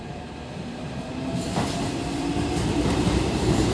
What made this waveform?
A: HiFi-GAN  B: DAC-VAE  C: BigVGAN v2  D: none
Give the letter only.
C